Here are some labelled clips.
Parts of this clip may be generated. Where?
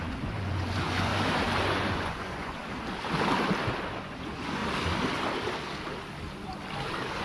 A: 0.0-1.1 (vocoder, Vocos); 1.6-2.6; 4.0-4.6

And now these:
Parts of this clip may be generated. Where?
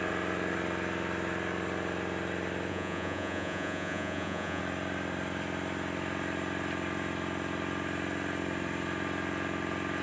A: 2.7-4.6 (vocoder, Vocos)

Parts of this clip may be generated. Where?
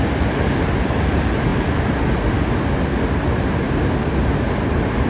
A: none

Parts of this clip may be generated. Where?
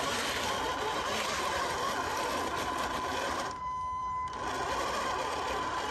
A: none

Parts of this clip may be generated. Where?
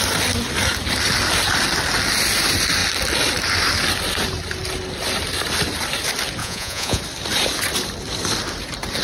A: 6.4-7.0 (vocoder, Vocos)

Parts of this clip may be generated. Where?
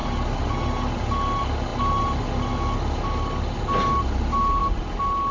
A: none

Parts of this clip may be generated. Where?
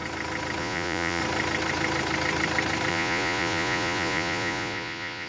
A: 0.6-1.2 (vocoder, Vocos); 2.9-5.3